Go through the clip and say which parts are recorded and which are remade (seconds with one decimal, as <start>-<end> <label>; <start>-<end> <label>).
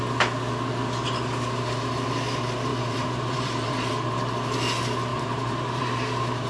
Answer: 0.0-2.7 recorded; 2.7-3.9 remade; 3.9-5.1 recorded; 5.1-6.5 remade